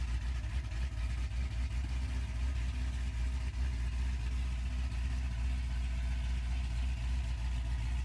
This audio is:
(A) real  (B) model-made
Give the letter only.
A